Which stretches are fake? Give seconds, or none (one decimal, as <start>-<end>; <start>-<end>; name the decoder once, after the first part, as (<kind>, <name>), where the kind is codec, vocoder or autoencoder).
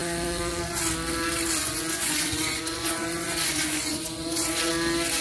0.0-0.8 (vocoder, Vocos); 1.6-4.7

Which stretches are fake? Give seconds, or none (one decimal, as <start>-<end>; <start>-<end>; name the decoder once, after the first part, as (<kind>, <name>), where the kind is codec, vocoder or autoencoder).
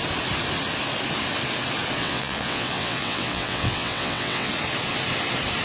2.0-4.5 (vocoder, WaveNeXt)